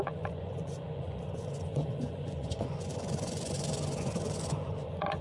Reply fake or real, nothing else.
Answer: fake